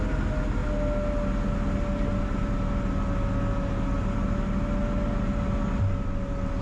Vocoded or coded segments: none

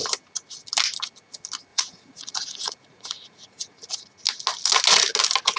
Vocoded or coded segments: 1.7-3.9 (vocoder, Vocos)

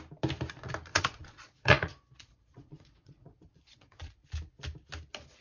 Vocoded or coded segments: 0.9-4.1 (vocoder, Vocos)

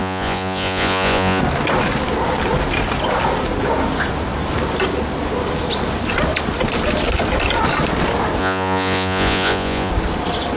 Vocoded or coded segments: 0.0-1.4 (vocoder, Vocos); 8.4-9.9